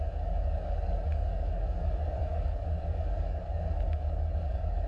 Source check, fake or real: fake